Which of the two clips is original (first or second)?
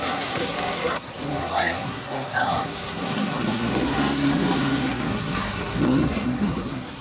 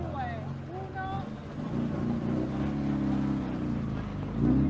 second